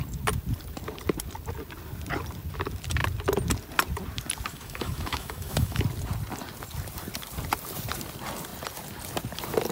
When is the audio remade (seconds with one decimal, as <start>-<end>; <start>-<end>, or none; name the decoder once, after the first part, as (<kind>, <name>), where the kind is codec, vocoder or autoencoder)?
4.5-5.8 (autoencoder, DAC-VAE)